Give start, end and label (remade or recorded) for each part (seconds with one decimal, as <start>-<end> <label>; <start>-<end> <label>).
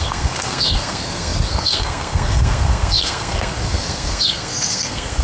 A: 0.0-5.2 remade